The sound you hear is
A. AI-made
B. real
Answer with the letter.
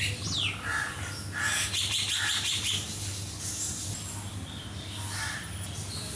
B